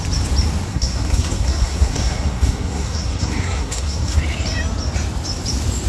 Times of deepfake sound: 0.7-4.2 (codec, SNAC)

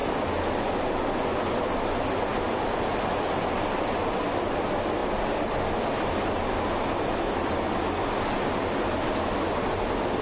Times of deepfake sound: none

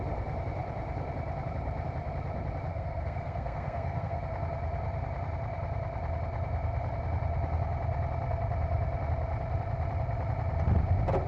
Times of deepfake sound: 2.7-4.2 (codec, SNAC)

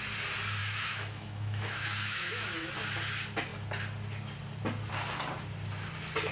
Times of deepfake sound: 0.6-2.7 (autoencoder, DAC-VAE)